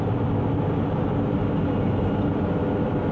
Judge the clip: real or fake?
real